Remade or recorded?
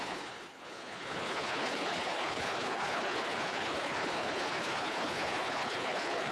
remade